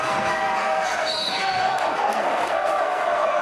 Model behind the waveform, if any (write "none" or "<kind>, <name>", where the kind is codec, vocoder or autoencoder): codec, SNAC